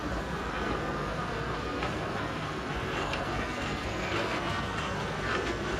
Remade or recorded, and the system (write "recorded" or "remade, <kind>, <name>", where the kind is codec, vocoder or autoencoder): remade, codec, SNAC